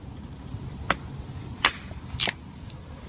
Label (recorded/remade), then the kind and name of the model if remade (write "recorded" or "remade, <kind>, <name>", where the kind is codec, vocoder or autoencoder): recorded